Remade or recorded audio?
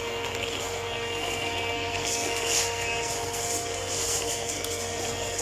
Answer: remade